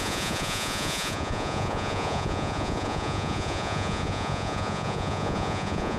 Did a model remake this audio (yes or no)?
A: yes